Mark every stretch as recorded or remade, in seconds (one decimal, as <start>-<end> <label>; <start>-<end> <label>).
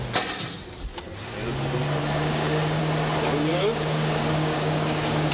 0.0-2.0 recorded; 2.0-2.8 remade; 2.8-3.5 recorded; 3.5-5.3 remade